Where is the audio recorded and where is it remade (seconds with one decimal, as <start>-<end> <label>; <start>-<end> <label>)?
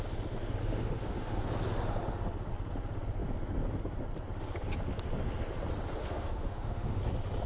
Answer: 0.0-0.6 recorded; 0.6-1.4 remade; 1.4-6.0 recorded; 6.0-7.0 remade; 7.0-7.5 recorded